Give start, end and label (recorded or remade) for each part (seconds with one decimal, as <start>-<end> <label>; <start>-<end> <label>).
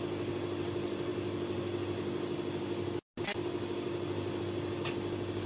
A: 0.0-5.5 recorded